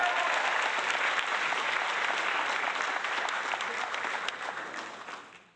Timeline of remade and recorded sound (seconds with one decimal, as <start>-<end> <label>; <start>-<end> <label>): 0.0-5.6 recorded